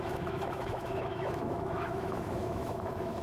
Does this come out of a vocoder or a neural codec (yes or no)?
yes